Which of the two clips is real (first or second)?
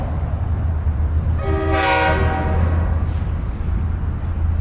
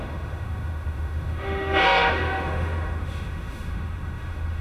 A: first